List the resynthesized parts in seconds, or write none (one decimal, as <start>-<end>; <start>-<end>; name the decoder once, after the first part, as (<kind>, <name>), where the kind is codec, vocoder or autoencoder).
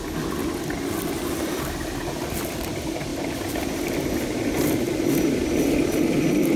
none